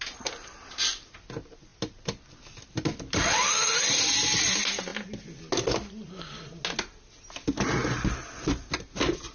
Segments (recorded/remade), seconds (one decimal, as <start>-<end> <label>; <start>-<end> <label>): 0.0-9.3 recorded